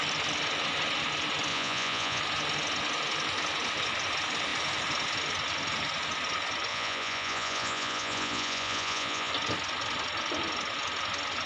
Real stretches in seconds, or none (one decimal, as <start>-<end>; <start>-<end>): 0.0-1.5; 2.2-6.7; 9.3-11.5

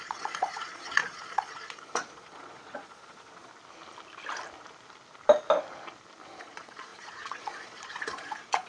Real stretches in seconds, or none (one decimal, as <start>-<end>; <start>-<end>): 3.5-6.4

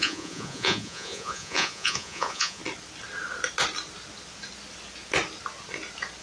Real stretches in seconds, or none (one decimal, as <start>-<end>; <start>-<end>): 2.6-6.2